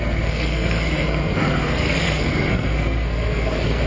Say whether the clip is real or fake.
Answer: fake